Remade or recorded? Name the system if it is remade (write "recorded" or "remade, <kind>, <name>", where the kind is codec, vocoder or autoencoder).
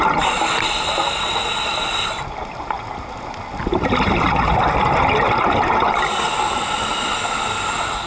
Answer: recorded